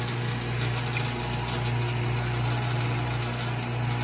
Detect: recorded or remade recorded